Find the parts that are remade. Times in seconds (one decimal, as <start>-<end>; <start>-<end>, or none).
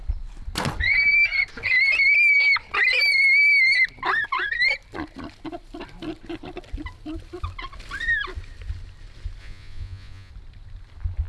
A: 9.4-10.3